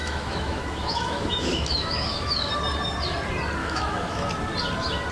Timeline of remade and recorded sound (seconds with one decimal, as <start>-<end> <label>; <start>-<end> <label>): 0.0-2.5 remade; 2.5-3.6 recorded; 3.6-4.3 remade; 4.3-5.1 recorded